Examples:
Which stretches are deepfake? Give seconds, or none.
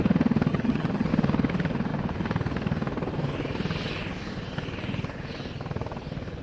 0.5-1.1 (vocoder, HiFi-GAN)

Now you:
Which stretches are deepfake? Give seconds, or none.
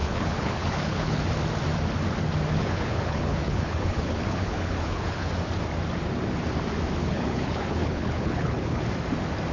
0.0-1.2 (codec, HILCodec); 2.6-5.3; 7.0-8.8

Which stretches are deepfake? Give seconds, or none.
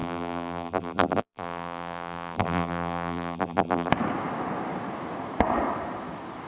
0.0-3.9 (vocoder, BigVGAN v2)